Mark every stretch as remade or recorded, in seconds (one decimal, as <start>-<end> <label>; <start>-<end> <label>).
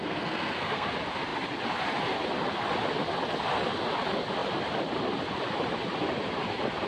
0.0-0.9 remade; 0.9-6.9 recorded